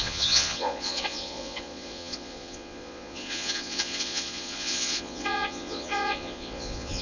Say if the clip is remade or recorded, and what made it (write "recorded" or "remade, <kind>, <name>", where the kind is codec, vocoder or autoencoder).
remade, vocoder, Vocos